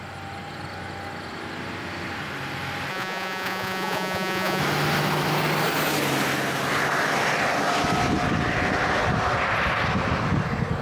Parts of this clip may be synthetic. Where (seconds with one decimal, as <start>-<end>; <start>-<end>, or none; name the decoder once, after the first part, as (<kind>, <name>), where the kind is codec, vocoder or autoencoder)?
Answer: 2.9-4.6 (vocoder, Vocos)